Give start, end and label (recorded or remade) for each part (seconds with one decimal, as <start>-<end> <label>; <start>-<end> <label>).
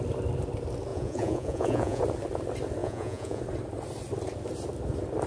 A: 0.0-0.9 recorded; 0.9-2.0 remade; 2.0-2.8 recorded; 2.8-3.4 remade; 3.4-5.3 recorded